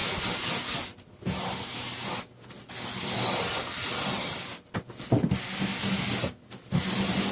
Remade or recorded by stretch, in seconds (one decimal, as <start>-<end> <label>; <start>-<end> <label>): 0.0-7.3 recorded